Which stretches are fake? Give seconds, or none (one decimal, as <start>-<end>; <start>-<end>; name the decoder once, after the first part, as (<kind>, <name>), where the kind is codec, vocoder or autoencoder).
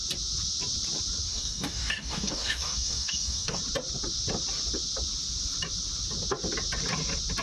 1.3-3.6 (codec, DAC)